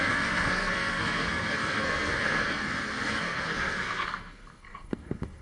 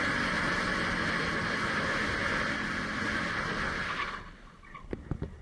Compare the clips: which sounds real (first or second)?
second